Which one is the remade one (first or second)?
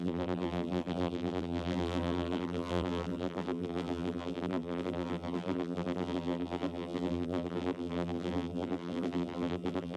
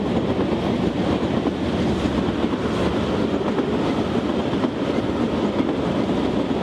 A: first